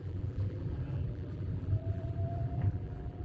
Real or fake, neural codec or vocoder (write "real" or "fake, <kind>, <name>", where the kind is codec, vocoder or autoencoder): fake, vocoder, BigVGAN v2